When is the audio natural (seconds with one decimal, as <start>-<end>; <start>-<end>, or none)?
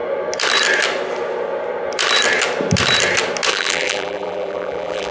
0.0-3.5